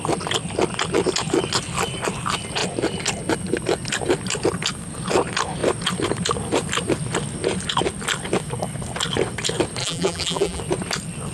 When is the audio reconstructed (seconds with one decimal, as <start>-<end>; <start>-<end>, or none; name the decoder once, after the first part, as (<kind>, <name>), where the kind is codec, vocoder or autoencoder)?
9.8-10.6 (vocoder, BigVGAN v2)